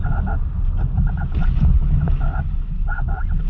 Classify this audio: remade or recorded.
recorded